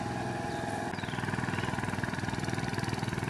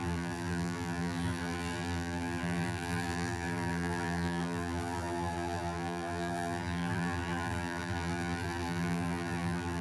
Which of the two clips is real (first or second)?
first